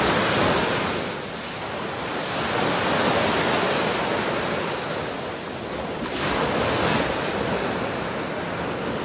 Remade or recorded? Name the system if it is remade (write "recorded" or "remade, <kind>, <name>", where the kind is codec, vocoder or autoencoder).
recorded